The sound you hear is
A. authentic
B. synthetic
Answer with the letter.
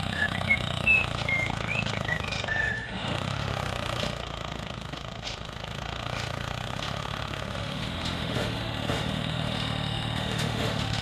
B